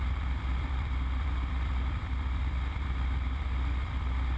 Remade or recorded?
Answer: remade